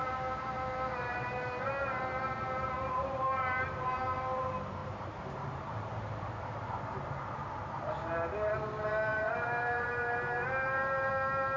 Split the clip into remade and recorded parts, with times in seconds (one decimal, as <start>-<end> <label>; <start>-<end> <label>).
0.0-2.0 remade; 2.0-4.8 recorded; 4.8-7.9 remade; 7.9-9.1 recorded; 9.1-11.1 remade; 11.1-11.6 recorded

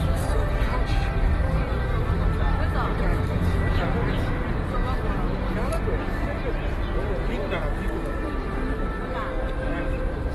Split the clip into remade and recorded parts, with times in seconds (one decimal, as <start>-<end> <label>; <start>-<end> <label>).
0.0-10.3 recorded

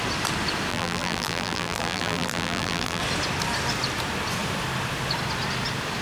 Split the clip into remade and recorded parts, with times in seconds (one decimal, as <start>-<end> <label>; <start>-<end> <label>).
0.0-0.7 recorded; 0.7-3.0 remade; 3.0-6.0 recorded